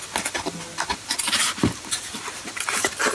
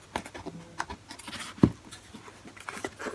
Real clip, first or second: second